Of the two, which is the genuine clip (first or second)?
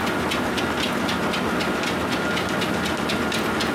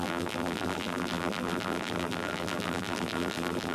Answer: first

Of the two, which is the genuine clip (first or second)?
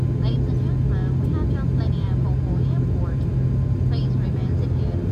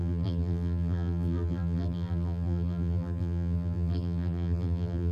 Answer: first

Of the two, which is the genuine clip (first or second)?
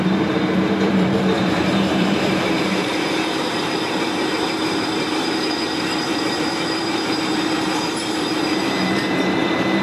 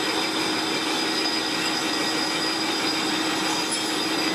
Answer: second